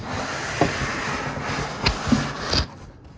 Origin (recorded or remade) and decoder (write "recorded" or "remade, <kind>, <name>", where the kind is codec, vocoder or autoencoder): recorded